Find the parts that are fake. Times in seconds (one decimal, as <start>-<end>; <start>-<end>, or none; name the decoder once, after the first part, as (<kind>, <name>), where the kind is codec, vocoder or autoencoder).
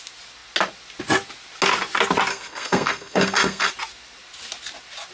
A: 2.3-3.7 (codec, SNAC)